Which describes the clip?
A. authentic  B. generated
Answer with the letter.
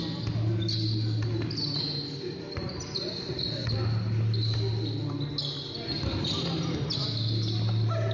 A